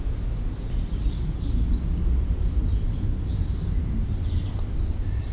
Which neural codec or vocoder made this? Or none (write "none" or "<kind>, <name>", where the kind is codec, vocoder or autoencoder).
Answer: none